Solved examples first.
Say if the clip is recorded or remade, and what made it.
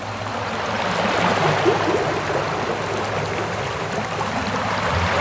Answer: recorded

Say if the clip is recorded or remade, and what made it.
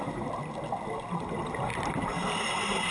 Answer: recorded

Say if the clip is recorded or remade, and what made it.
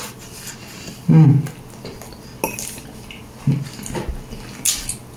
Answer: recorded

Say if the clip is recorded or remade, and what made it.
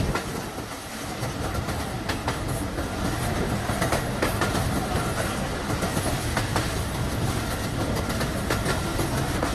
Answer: recorded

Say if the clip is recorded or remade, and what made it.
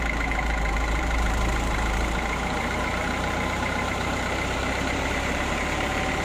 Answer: remade, vocoder, BigVGAN v2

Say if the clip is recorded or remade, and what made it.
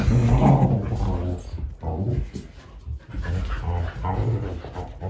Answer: recorded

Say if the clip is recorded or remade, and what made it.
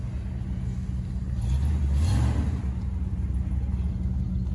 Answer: recorded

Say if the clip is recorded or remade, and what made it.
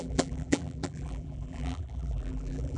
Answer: remade, vocoder, BigVGAN v2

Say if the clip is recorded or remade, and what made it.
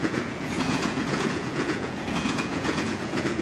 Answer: remade, vocoder, Vocos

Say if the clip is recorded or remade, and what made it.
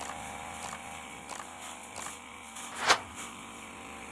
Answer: recorded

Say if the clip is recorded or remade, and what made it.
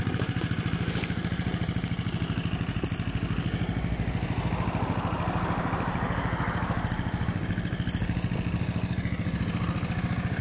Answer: recorded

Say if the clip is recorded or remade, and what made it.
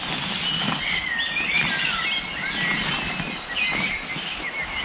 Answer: recorded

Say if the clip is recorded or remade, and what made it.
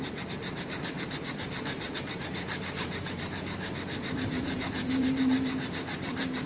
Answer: remade, vocoder, BigVGAN v2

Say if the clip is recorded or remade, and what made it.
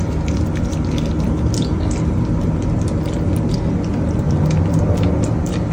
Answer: recorded